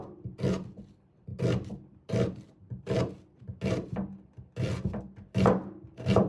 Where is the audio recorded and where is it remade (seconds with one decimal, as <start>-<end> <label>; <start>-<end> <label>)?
0.0-6.3 recorded